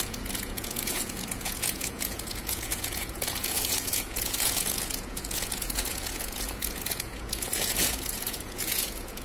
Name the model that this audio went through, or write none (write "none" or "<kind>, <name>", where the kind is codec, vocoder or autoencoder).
vocoder, Vocos